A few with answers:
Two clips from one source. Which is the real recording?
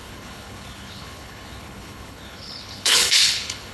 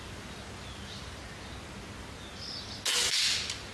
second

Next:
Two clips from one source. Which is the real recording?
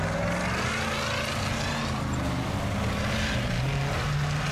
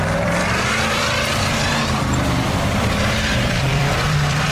first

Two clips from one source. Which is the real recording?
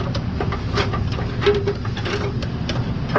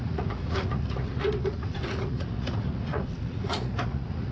first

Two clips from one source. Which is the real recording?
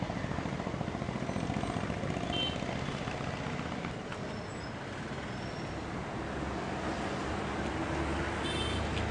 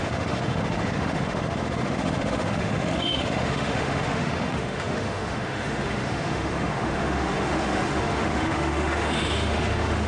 first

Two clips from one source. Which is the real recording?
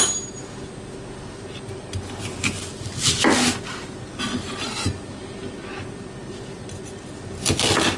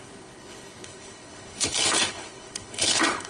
first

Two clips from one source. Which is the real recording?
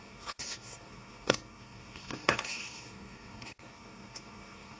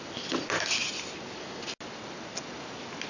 second